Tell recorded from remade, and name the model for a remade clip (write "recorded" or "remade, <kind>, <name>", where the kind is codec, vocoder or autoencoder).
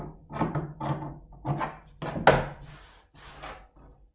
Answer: recorded